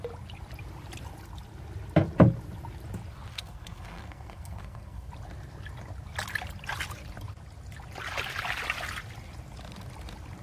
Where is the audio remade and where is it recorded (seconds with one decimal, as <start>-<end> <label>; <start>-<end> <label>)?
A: 0.0-3.3 recorded; 3.3-5.1 remade; 5.1-10.4 recorded